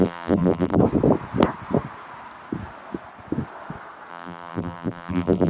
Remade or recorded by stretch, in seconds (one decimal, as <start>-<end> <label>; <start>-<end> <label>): 0.0-0.8 remade; 0.8-4.1 recorded; 4.1-5.5 remade